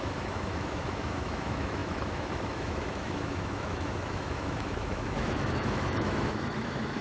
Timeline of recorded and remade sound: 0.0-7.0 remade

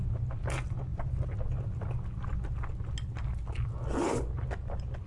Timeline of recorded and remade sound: 0.0-5.1 recorded

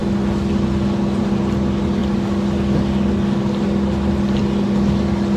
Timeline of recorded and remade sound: 0.0-5.4 recorded

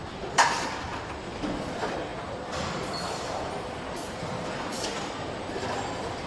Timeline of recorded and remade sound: 0.0-6.3 remade

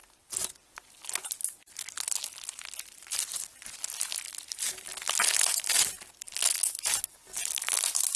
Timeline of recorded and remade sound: 0.0-8.2 recorded

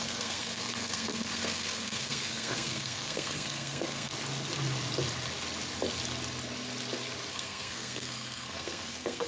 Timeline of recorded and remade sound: 0.0-4.1 remade; 4.1-7.3 recorded; 7.3-9.3 remade

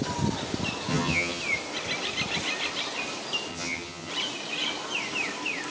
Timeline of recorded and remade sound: 0.0-0.9 recorded; 0.9-1.4 remade; 1.4-3.5 recorded; 3.5-4.1 remade; 4.1-5.7 recorded

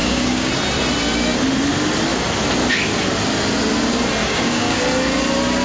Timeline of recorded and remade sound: 0.0-0.5 remade; 0.5-4.2 recorded; 4.2-4.8 remade; 4.8-5.6 recorded